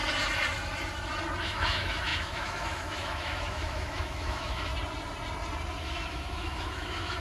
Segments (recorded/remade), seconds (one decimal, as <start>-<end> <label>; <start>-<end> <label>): 0.0-1.4 recorded; 1.4-4.7 remade; 4.7-5.8 recorded; 5.8-7.2 remade